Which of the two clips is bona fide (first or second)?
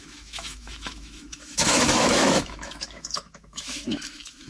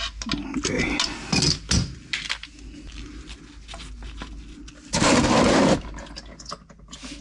second